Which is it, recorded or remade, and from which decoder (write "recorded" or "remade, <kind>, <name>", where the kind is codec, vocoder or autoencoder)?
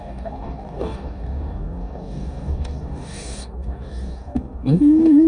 remade, codec, DAC